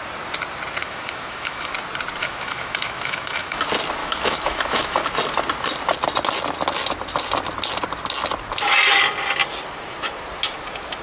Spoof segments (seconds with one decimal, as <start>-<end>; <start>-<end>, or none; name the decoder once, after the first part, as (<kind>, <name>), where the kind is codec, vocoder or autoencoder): 0.8-1.7 (autoencoder, DAC-VAE); 2.2-3.6; 4.0-5.0